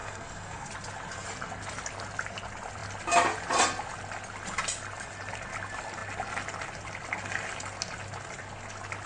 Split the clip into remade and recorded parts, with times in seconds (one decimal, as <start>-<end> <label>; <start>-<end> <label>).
0.0-0.7 remade; 0.7-9.1 recorded